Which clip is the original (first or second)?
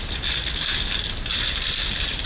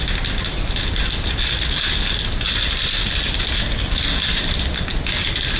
second